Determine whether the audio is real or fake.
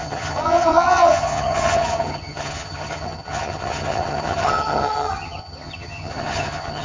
fake